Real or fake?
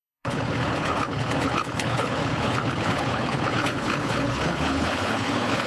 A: fake